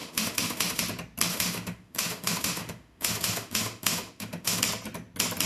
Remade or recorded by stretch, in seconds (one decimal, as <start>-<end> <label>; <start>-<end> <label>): 0.0-0.8 remade; 0.8-1.3 recorded; 1.3-4.6 remade; 4.6-5.5 recorded